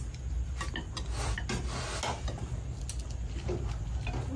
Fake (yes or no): no